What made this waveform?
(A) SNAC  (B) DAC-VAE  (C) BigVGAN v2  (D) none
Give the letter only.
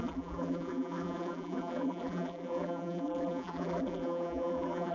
C